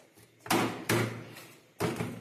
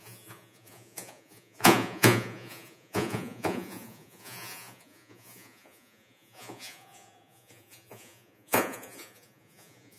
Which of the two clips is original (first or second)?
first